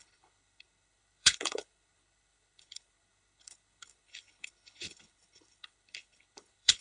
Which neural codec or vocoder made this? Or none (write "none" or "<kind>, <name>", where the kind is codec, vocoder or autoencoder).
codec, HILCodec